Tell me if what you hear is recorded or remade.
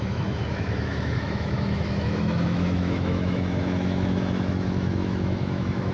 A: remade